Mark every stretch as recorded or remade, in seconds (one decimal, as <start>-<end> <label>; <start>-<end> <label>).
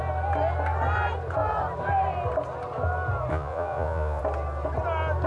0.0-3.3 recorded; 3.3-4.2 remade; 4.2-5.3 recorded